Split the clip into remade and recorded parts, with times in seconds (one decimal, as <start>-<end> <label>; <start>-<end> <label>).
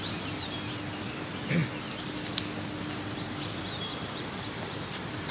0.0-1.6 remade; 1.6-3.6 recorded; 3.6-5.3 remade